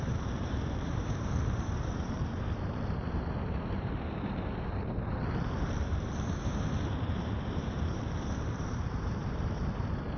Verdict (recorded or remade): remade